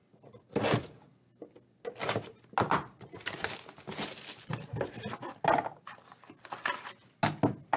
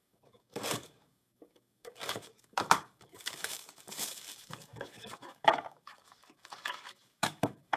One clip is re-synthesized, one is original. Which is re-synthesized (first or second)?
second